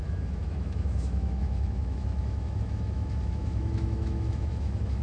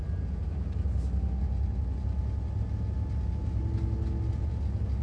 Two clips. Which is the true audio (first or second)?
second